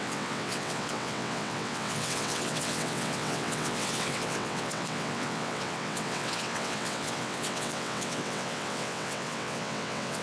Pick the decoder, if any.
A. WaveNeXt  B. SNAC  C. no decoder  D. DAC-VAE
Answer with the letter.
A